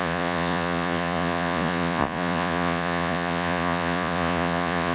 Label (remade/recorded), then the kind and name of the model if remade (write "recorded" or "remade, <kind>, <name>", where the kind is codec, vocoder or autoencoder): remade, vocoder, Vocos